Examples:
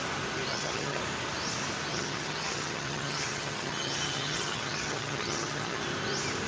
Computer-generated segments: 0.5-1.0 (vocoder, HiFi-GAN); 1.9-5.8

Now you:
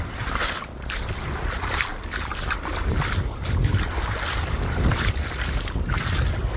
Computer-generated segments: none

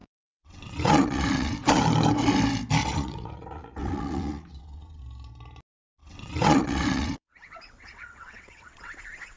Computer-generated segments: 0.0-1.8 (vocoder, WaveNeXt); 2.8-5.0; 6.0-9.0